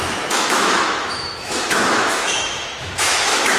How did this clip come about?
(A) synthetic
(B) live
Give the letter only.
A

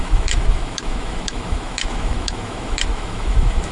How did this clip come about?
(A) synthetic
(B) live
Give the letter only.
A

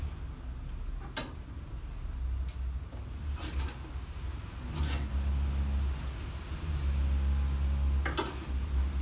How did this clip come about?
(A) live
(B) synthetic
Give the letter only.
A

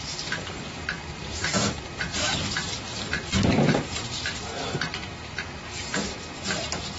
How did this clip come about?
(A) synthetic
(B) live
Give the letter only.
A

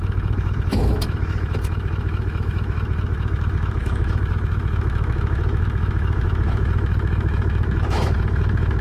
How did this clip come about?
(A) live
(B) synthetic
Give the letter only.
B